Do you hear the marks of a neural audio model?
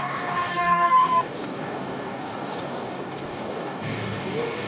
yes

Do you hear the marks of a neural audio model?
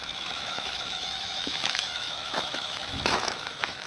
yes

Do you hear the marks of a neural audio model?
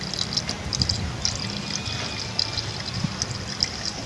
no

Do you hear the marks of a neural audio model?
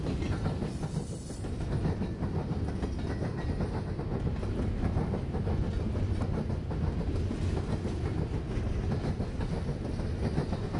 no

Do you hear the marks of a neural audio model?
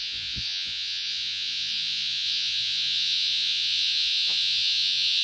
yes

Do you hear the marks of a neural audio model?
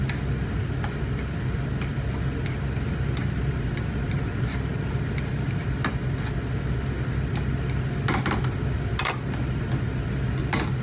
no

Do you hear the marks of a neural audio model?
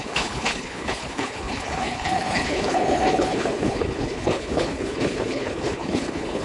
yes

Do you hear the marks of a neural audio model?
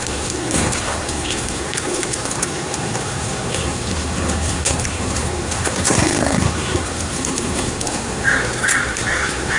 yes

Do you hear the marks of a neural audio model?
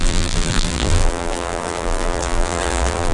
yes